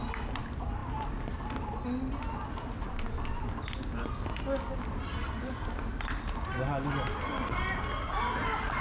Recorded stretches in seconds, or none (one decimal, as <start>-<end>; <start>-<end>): 0.0-8.8